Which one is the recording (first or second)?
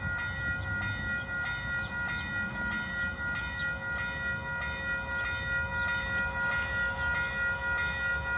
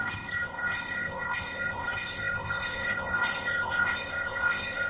first